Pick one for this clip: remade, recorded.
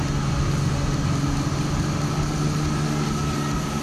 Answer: recorded